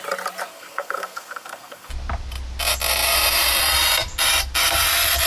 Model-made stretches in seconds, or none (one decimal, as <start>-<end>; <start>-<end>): 0.5-1.9